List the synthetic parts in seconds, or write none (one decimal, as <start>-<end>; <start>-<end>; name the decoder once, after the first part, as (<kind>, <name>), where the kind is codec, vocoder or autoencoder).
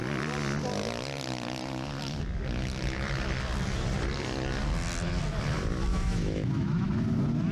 5.9-6.9 (autoencoder, DAC-VAE)